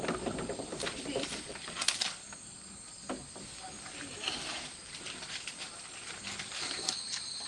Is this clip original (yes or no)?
yes